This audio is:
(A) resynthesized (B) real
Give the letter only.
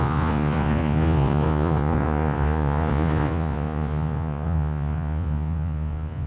A